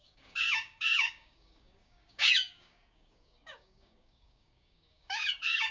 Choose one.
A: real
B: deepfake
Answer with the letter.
B